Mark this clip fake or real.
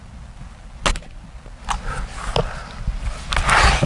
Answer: real